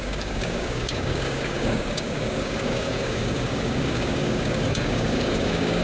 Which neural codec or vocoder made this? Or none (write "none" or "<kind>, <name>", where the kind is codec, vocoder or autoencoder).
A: codec, DAC